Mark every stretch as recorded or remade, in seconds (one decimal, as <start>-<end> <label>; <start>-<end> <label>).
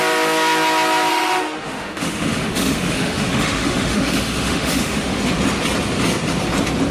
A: 0.0-1.1 recorded; 1.1-5.2 remade; 5.2-6.9 recorded